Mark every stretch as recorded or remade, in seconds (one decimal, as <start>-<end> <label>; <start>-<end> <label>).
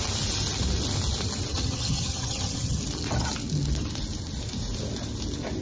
0.0-1.5 recorded; 1.5-2.8 remade; 2.8-5.6 recorded